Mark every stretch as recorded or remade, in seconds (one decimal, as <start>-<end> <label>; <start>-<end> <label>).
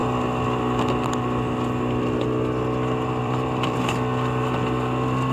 0.0-3.2 recorded; 3.2-5.3 remade